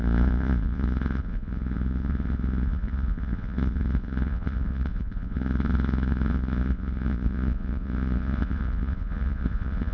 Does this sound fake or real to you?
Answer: fake